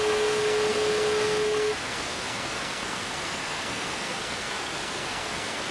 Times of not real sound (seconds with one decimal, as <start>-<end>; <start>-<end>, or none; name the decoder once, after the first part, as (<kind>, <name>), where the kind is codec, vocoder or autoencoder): 0.0-5.7 (codec, SNAC)